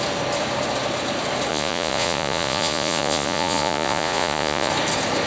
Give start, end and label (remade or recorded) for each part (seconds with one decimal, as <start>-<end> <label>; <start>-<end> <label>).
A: 0.0-1.5 recorded; 1.5-4.7 remade; 4.7-5.3 recorded